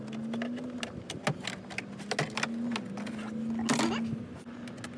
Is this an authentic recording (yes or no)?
yes